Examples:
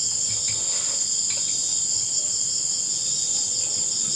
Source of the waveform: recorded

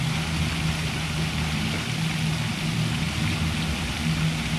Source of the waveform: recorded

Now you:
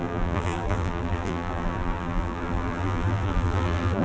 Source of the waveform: remade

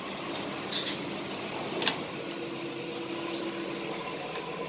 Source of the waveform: recorded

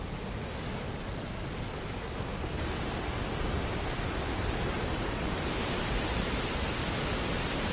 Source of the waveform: recorded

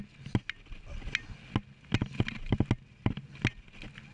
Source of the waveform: recorded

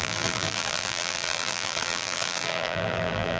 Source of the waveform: remade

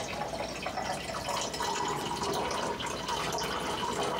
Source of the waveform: recorded